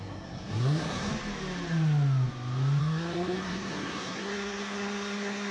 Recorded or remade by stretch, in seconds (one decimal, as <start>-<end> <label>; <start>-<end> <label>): 0.0-1.1 remade; 1.1-2.8 recorded; 2.8-5.5 remade